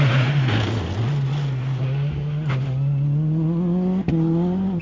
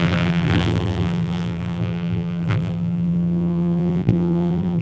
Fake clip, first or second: second